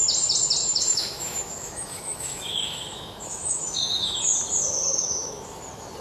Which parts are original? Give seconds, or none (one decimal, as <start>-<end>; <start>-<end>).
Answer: 0.0-0.6; 4.2-4.9; 5.6-6.0